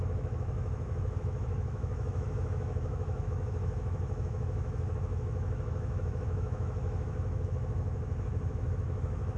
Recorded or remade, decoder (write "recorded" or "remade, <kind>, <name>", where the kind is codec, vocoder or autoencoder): remade, autoencoder, DAC-VAE